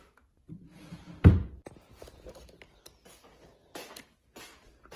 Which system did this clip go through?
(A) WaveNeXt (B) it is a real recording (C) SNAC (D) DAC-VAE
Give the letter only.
B